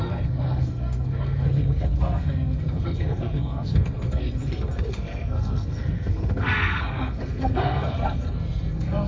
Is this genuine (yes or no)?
no